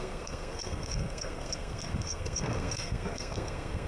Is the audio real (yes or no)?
no